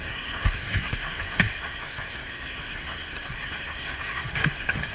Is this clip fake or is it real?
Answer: fake